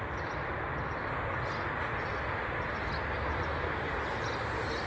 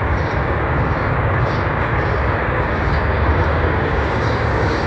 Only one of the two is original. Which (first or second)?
first